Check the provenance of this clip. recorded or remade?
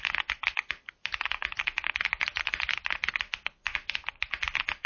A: recorded